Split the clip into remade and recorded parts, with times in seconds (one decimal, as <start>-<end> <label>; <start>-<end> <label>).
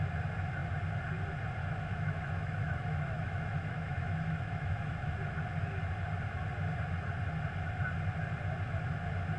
0.0-1.6 recorded; 1.6-5.1 remade; 5.1-9.4 recorded